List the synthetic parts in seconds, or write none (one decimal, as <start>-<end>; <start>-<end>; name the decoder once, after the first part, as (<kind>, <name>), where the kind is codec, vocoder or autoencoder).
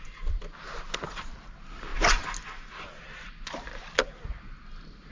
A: none